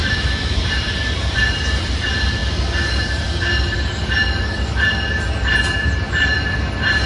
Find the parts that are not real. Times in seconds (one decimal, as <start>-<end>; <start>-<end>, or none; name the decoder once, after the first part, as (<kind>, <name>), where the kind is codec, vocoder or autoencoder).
0.0-0.6 (autoencoder, DAC-VAE)

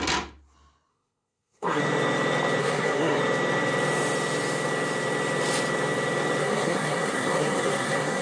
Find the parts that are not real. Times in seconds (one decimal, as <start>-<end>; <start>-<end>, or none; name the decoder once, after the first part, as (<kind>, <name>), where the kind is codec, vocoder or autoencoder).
0.9-1.8 (codec, SNAC); 2.6-3.2; 6.4-8.2

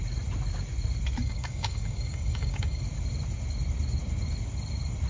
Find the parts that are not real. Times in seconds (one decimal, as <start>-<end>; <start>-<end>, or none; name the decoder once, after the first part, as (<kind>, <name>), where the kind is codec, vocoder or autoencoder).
1.2-2.8 (codec, DAC)